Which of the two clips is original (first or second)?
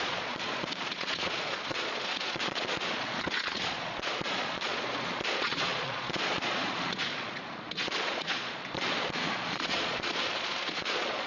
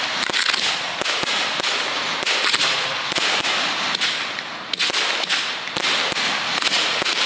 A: second